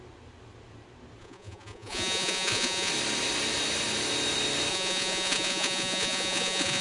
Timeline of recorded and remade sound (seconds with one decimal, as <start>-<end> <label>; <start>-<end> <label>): 0.0-1.2 recorded; 1.2-2.9 remade; 2.9-4.7 recorded; 4.7-6.8 remade

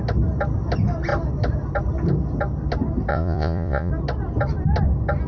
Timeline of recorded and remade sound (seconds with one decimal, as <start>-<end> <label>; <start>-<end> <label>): 0.0-3.1 recorded; 3.1-3.9 remade; 3.9-5.3 recorded

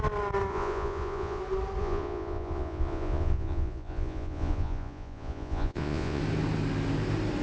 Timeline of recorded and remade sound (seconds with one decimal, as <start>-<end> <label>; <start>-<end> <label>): 0.0-0.5 recorded; 0.5-1.4 remade; 1.4-1.8 recorded; 1.8-6.2 remade; 6.2-7.4 recorded

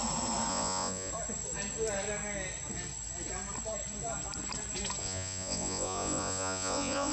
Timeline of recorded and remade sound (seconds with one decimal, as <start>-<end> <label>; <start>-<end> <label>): 0.0-0.5 recorded; 0.5-1.1 remade; 1.1-5.0 recorded; 5.0-7.1 remade

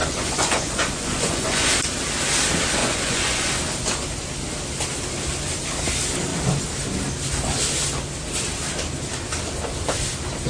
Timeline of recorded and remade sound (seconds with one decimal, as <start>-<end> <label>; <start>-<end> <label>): 0.0-1.7 remade; 1.7-2.8 recorded; 2.8-3.5 remade; 3.5-10.5 recorded